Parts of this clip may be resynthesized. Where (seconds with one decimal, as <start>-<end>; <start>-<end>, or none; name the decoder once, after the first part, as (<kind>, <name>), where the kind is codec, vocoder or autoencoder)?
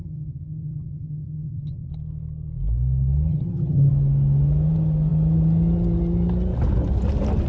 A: 0.0-1.9 (vocoder, HiFi-GAN); 3.3-3.9